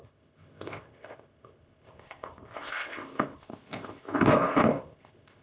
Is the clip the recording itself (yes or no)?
no